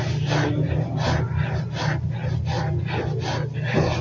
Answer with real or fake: real